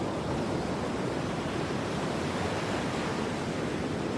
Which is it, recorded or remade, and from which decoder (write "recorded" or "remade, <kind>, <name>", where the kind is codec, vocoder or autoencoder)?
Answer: recorded